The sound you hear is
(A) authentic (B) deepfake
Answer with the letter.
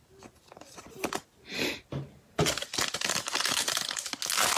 A